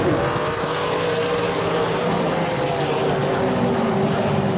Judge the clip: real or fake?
real